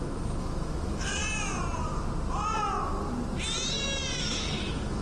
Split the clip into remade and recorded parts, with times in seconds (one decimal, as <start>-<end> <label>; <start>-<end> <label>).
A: 0.0-1.2 remade; 1.2-4.2 recorded; 4.2-5.0 remade